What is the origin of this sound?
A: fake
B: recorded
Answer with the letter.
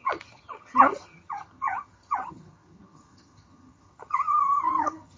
A